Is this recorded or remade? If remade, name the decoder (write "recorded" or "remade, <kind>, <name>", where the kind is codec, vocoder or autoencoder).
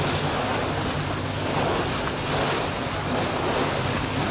recorded